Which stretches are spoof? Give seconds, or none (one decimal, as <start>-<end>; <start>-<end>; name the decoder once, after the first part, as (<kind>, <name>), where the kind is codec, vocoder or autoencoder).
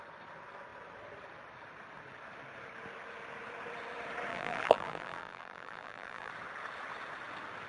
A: 4.3-6.3 (vocoder, BigVGAN v2)